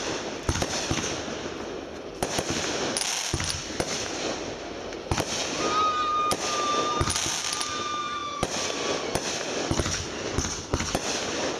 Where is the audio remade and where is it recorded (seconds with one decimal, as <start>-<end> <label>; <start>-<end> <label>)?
0.0-11.6 recorded